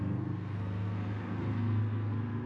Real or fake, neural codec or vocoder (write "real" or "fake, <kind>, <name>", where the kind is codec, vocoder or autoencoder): fake, codec, SNAC